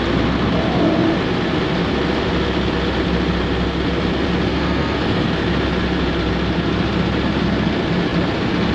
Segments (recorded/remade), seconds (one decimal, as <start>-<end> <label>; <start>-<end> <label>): 0.0-4.5 recorded; 4.5-5.3 remade; 5.3-8.7 recorded

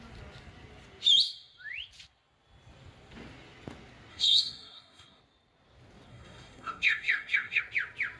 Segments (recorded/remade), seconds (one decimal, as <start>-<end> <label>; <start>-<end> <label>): 0.0-4.1 recorded; 4.1-5.2 remade; 5.2-6.1 recorded; 6.1-7.6 remade; 7.6-8.2 recorded

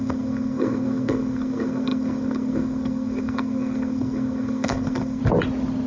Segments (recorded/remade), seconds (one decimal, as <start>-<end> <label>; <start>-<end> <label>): 0.0-5.2 remade; 5.2-5.9 recorded

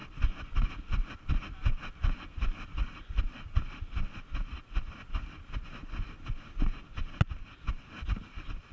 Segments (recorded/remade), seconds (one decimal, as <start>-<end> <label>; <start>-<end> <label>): 0.0-8.7 recorded

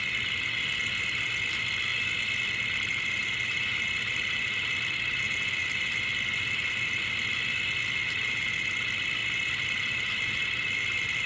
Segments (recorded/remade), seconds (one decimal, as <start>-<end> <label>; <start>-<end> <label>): 0.0-11.3 recorded